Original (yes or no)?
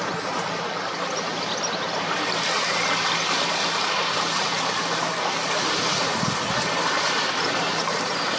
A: no